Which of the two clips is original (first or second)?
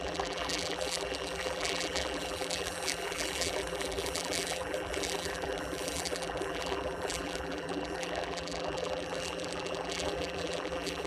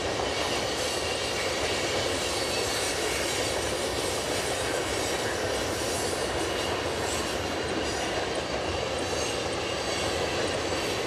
second